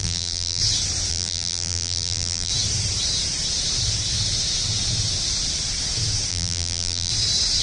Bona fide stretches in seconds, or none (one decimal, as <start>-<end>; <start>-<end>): 0.6-1.1; 2.5-6.3; 7.1-7.6